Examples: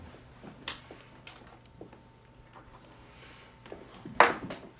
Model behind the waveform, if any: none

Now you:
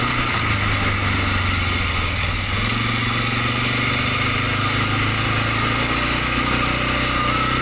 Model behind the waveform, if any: none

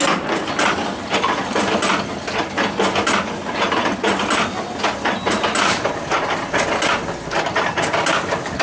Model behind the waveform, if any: none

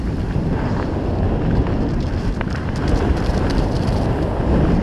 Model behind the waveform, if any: none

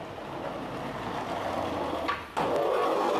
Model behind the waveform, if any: none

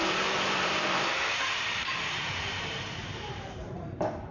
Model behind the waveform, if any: vocoder, BigVGAN v2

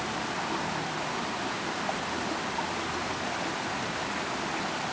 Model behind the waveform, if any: vocoder, BigVGAN v2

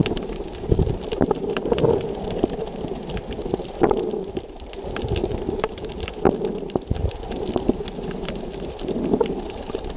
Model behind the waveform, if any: vocoder, BigVGAN v2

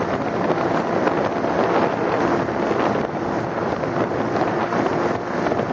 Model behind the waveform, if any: none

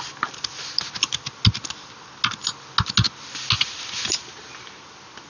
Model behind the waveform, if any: none